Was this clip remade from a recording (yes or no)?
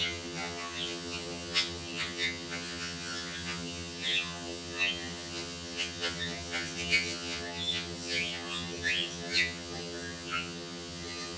yes